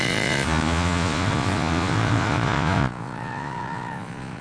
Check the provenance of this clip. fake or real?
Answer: fake